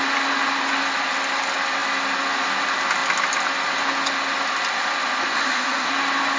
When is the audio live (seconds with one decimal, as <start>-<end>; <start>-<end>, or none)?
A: 0.0-5.3; 5.9-6.4